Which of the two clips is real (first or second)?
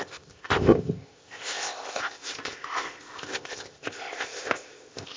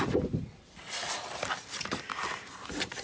second